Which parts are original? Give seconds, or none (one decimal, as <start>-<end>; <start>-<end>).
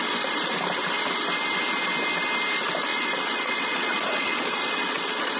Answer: 0.0-2.9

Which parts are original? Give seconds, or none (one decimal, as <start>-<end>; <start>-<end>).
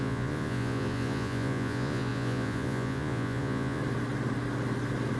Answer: 3.8-5.2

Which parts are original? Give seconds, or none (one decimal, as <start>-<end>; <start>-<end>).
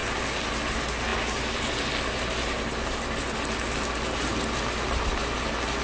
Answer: 0.0-5.8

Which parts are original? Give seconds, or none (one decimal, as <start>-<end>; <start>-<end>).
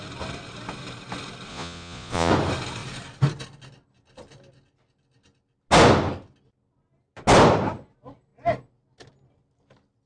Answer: 0.0-1.5; 2.3-10.1